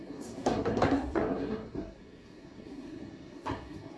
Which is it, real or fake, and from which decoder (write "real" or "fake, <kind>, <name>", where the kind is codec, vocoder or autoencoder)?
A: fake, codec, SNAC